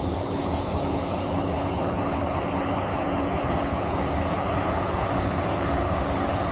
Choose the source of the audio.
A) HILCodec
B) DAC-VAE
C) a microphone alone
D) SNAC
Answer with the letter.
A